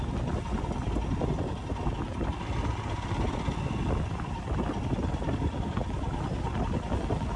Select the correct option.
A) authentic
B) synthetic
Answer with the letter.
A